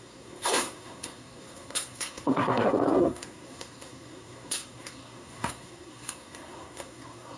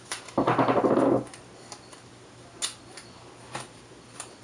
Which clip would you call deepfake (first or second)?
first